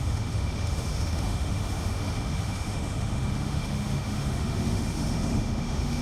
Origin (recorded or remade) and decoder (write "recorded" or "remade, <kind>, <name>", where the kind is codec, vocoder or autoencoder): remade, autoencoder, DAC-VAE